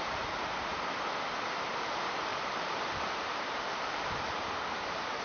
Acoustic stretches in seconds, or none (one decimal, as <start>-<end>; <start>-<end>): 0.7-1.7